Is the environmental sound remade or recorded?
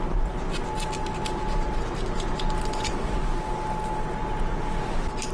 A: recorded